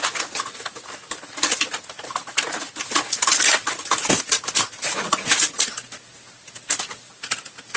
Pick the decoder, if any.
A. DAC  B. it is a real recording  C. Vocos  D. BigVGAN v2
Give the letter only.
B